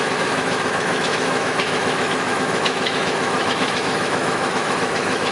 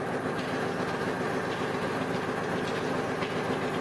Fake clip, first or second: first